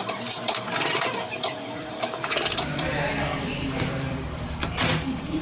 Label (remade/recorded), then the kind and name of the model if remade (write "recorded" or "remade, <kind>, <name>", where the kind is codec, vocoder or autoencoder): remade, vocoder, BigVGAN v2